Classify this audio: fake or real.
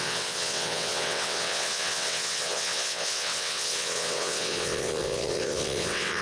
fake